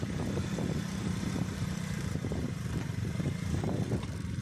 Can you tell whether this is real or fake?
fake